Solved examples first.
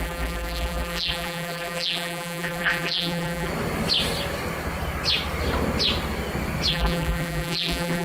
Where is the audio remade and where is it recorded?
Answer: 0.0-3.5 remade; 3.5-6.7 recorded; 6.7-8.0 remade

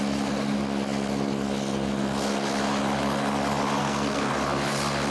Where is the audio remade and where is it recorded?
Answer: 0.0-3.8 recorded; 3.8-4.3 remade; 4.3-5.1 recorded

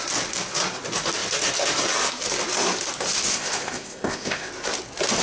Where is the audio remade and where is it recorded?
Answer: 0.0-3.3 recorded; 3.3-4.5 remade; 4.5-5.2 recorded